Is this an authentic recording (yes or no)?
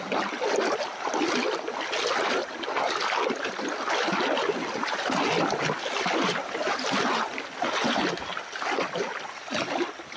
yes